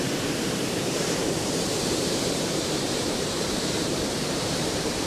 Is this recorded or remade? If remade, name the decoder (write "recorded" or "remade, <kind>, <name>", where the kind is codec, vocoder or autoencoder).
remade, vocoder, BigVGAN v2